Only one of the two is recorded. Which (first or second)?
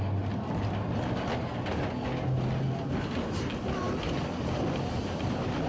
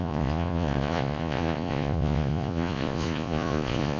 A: first